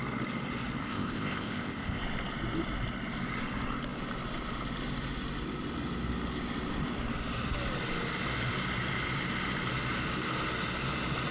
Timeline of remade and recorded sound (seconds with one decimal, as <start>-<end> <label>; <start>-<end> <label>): 0.0-0.8 recorded; 0.8-2.0 remade; 2.0-11.3 recorded